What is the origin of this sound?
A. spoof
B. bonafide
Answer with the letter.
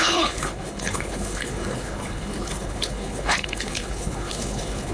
A